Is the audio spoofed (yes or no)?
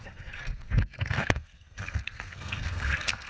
yes